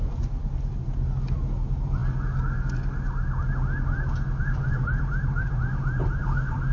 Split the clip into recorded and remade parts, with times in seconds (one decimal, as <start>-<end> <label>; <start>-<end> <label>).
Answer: 0.0-0.9 remade; 0.9-1.6 recorded; 1.6-2.0 remade; 2.0-4.4 recorded; 4.4-6.7 remade